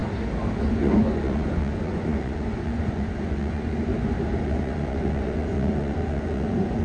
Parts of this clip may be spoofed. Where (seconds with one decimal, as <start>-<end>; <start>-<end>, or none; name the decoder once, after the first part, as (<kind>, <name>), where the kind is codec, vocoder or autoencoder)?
0.6-3.9 (vocoder, Vocos); 4.4-6.8